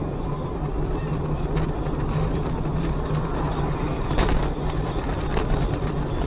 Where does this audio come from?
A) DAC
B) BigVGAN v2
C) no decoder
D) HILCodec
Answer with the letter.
C